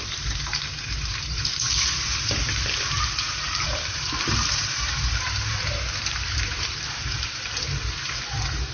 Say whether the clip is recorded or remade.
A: remade